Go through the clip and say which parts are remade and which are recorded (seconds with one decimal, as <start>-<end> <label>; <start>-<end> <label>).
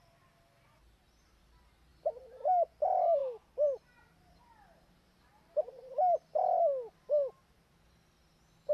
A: 0.0-8.7 recorded